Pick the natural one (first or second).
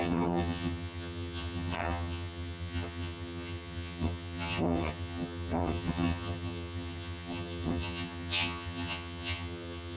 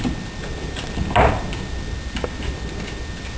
second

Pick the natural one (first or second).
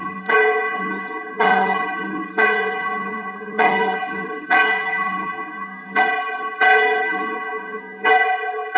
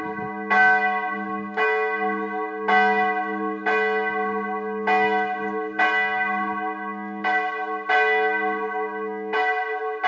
second